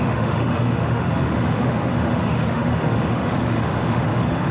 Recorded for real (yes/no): no